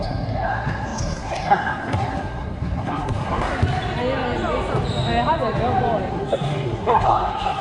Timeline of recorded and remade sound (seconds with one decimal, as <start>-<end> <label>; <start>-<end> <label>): 0.0-3.5 remade; 3.5-6.1 recorded; 6.1-7.6 remade